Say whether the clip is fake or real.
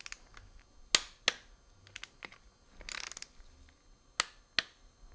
real